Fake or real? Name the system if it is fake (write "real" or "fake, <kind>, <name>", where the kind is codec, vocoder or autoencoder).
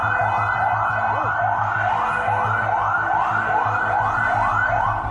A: real